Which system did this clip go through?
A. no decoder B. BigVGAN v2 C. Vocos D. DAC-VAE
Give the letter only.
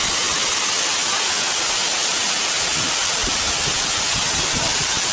A